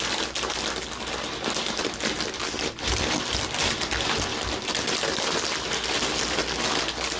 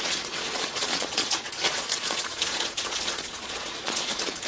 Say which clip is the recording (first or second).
first